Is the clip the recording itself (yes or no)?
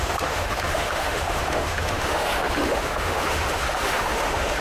no